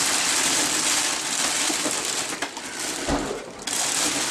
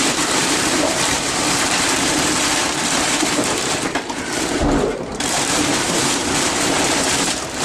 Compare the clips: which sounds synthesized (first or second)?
second